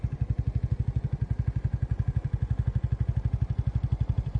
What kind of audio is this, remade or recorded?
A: recorded